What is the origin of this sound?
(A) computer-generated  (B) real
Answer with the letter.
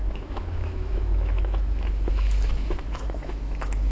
A